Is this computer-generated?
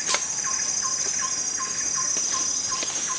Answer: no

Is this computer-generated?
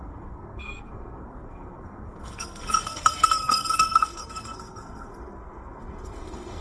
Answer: yes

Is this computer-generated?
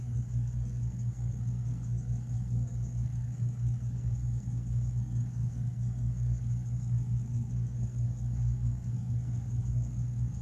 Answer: yes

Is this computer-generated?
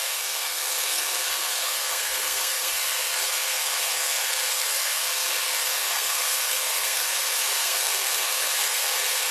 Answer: yes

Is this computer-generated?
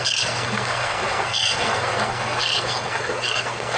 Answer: yes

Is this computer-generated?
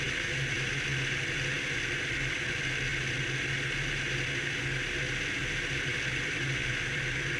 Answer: no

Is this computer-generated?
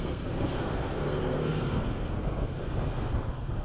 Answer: yes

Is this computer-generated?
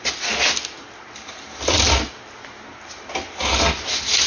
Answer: no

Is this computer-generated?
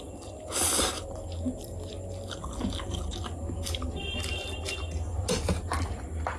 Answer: no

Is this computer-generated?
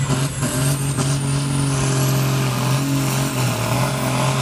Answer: no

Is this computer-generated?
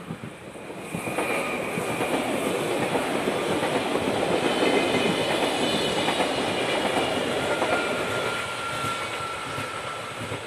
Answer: no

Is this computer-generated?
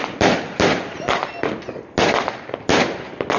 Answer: no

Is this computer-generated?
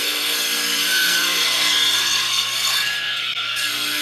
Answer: yes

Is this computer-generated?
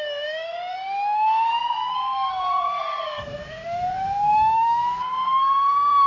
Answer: yes